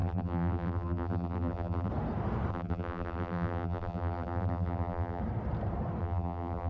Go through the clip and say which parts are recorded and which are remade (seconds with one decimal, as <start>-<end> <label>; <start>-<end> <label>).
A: 0.0-1.9 remade; 1.9-2.5 recorded; 2.5-5.2 remade; 5.2-6.0 recorded; 6.0-6.7 remade